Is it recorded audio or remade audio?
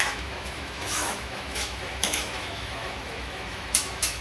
remade